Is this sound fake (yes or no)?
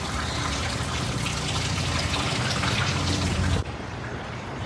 yes